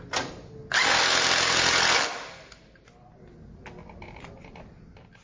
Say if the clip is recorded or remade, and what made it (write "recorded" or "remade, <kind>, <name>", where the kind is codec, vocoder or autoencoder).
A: recorded